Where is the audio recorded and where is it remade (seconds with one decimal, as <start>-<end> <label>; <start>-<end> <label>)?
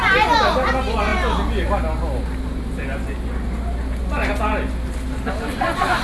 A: 0.0-6.0 recorded